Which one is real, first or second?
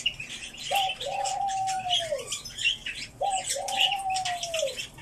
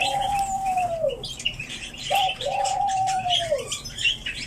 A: first